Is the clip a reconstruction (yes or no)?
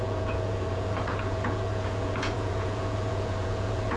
yes